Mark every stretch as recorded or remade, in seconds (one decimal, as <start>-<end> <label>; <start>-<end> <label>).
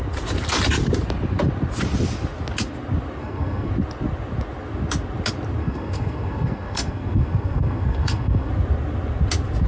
0.0-3.2 recorded; 3.2-3.7 remade; 3.7-5.6 recorded; 5.6-8.5 remade; 8.5-9.7 recorded